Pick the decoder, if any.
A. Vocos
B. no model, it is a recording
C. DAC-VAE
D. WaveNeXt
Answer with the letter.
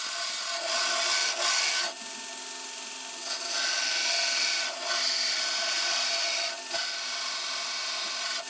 B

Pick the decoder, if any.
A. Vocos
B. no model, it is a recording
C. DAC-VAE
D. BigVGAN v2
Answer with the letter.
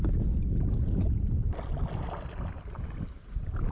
B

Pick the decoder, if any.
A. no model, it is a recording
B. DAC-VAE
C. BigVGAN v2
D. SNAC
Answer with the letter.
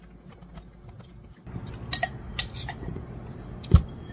A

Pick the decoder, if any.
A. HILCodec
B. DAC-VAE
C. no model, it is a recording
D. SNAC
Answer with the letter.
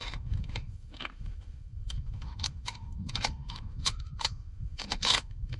B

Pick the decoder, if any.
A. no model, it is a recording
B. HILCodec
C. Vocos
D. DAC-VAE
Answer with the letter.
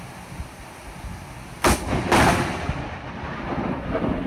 A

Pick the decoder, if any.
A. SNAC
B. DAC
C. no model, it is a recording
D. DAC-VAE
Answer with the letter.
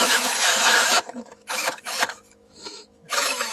D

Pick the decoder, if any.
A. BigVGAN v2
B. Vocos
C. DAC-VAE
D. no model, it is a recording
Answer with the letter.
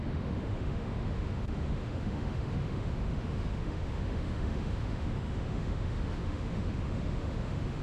C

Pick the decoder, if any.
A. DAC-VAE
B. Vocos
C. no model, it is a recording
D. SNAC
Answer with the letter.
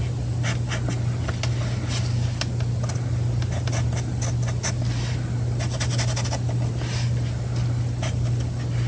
C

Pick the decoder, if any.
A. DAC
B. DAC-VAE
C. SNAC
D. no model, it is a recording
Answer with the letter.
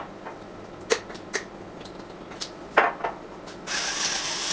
D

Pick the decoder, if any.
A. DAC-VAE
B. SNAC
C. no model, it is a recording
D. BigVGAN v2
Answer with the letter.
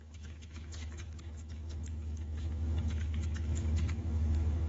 A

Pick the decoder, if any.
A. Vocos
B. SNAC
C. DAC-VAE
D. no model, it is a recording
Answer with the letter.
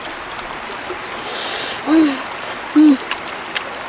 D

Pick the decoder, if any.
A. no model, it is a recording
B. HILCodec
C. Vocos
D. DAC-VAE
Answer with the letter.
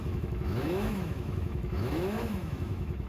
D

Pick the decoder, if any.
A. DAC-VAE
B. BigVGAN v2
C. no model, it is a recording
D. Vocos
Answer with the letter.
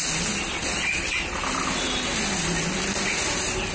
C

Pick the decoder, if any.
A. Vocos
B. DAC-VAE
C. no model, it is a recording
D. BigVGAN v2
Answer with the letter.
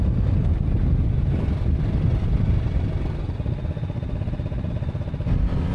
C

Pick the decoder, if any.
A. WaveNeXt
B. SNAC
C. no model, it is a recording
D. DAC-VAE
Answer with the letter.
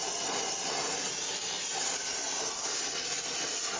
C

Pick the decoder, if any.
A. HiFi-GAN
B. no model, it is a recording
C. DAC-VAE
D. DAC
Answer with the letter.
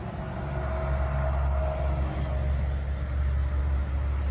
B